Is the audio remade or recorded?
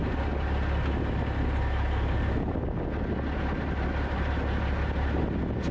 recorded